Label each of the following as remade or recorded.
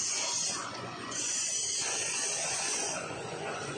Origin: remade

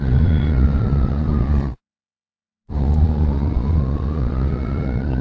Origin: remade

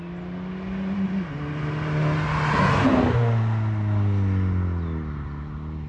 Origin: recorded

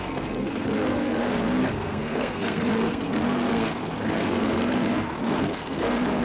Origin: remade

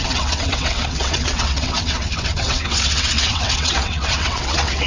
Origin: remade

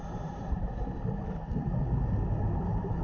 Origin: recorded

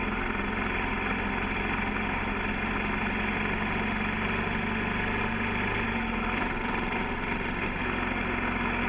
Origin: recorded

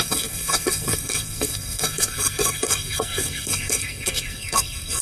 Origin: remade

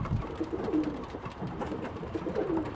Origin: remade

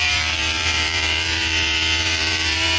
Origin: remade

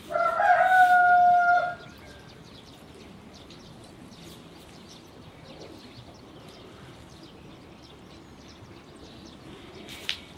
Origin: recorded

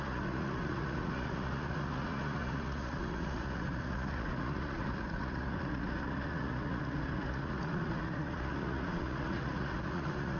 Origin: remade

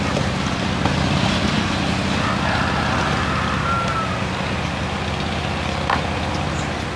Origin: recorded